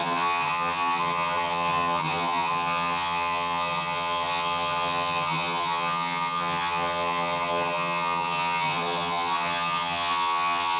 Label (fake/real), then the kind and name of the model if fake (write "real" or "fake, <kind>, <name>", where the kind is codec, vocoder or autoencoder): fake, vocoder, HiFi-GAN